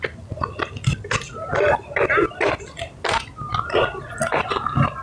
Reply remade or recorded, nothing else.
recorded